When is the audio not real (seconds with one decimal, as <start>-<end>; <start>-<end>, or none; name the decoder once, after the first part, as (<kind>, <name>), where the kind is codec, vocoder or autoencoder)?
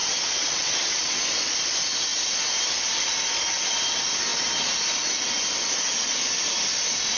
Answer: 0.0-1.2 (vocoder, WaveNeXt)